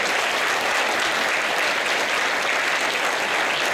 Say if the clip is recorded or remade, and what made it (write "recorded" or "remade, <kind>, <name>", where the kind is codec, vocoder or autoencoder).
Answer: recorded